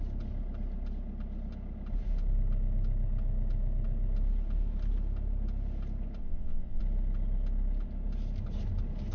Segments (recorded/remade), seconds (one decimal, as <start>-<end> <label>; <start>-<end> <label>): 0.0-6.2 recorded; 6.2-6.8 remade; 6.8-9.1 recorded